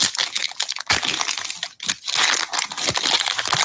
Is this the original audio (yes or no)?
yes